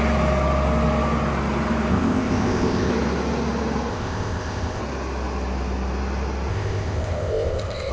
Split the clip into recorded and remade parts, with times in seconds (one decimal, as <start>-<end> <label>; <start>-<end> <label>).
0.0-1.9 recorded; 1.9-2.9 remade; 2.9-3.9 recorded; 3.9-4.8 remade; 4.8-6.5 recorded; 6.5-7.9 remade